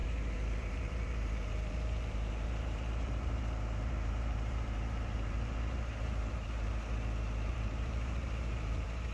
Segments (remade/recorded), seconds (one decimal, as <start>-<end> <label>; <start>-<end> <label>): 0.0-6.7 remade; 6.7-7.5 recorded; 7.5-9.1 remade